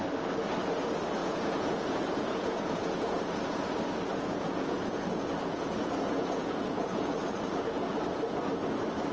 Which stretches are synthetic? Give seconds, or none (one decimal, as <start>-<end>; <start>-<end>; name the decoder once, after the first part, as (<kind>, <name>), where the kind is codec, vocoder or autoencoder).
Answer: 1.2-3.4 (vocoder, Vocos); 4.1-7.9